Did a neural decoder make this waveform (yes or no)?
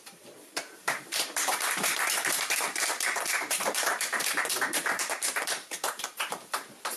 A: yes